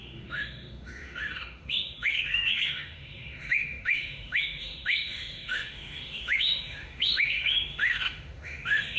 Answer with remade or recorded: remade